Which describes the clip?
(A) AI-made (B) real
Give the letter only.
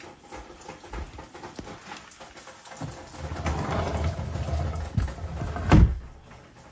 B